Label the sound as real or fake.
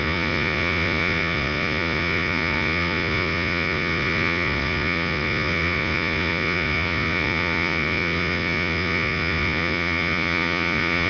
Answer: fake